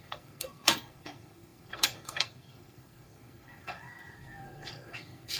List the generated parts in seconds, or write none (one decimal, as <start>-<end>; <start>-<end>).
0.0-5.4